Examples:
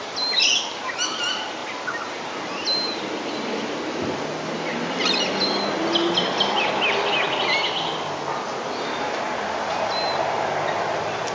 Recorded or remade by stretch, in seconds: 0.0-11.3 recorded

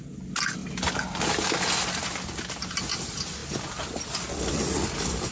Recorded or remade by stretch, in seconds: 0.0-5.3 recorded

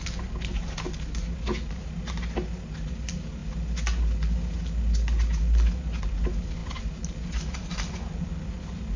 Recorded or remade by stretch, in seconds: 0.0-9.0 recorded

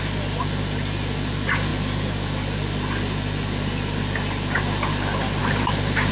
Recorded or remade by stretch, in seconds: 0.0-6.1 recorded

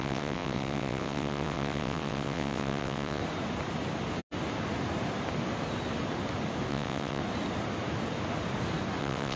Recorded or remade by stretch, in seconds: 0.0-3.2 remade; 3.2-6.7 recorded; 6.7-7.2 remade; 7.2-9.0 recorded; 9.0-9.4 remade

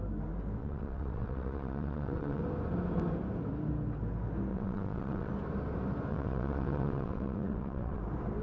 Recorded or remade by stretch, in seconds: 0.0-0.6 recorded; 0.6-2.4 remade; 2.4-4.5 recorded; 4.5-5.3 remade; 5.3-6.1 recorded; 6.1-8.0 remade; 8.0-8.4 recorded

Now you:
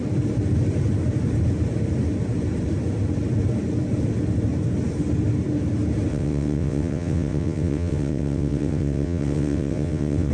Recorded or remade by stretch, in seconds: 0.0-6.1 recorded; 6.1-10.3 remade